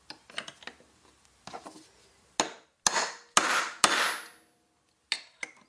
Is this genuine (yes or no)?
yes